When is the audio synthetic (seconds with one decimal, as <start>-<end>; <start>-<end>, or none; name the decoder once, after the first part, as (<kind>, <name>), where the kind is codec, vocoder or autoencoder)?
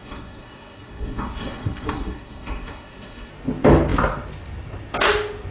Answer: 0.0-3.3 (codec, SNAC)